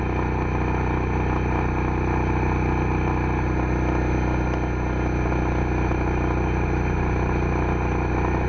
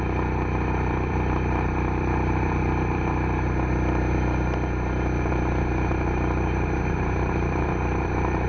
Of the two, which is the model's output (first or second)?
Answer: second